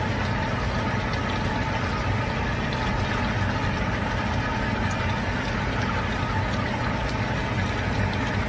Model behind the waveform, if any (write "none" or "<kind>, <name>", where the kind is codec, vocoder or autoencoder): none